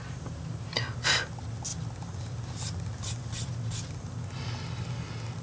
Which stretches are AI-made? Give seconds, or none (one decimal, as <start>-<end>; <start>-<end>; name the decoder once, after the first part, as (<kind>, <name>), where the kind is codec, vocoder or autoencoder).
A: 0.0-0.7 (vocoder, BigVGAN v2)